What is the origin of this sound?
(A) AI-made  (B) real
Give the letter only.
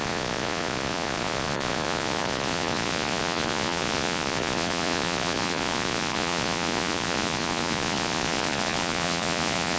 A